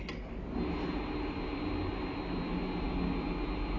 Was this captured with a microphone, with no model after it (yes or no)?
yes